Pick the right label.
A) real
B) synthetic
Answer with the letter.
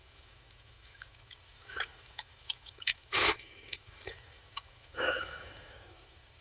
B